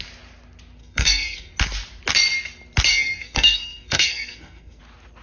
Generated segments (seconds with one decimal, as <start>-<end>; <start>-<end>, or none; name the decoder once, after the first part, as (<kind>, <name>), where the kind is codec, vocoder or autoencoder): 0.8-1.5 (codec, SNAC); 2.9-4.8